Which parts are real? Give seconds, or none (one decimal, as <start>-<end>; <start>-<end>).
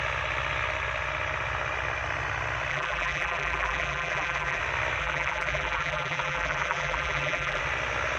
0.0-2.7; 4.6-5.0; 7.6-8.2